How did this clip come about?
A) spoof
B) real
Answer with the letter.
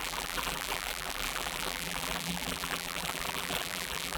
A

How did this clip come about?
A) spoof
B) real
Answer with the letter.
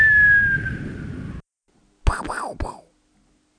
B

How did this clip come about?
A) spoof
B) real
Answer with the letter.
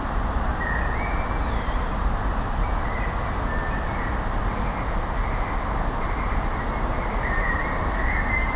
B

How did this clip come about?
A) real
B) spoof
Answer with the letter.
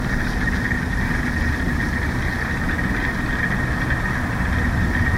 A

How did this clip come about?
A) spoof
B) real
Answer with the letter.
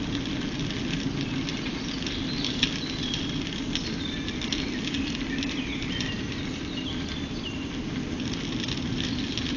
B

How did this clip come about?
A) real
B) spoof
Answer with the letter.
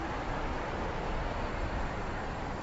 B